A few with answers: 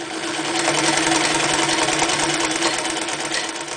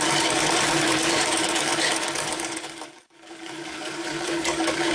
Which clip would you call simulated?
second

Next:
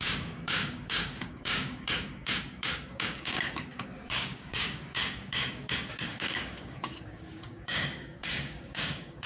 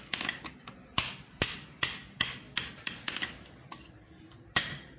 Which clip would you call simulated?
first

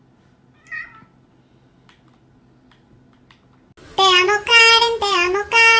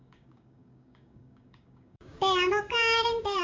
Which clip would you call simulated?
second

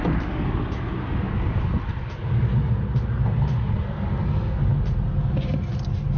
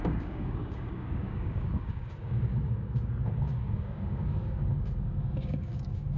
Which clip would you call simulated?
second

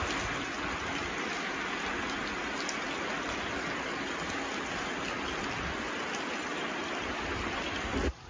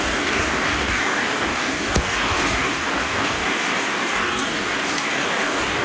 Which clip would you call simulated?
second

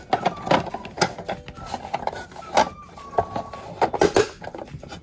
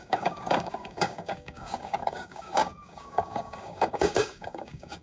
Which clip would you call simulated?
second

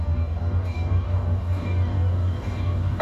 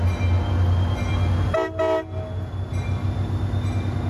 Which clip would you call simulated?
first